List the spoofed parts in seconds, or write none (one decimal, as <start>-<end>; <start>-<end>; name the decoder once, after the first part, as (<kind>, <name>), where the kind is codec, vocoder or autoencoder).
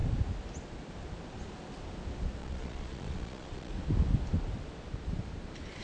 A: 2.4-3.7 (vocoder, Vocos)